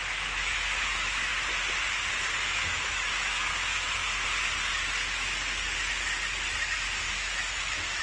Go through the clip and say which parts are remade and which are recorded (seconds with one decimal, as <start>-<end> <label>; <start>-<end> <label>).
0.0-1.3 remade; 1.3-2.5 recorded; 2.5-4.0 remade; 4.0-7.2 recorded; 7.2-8.0 remade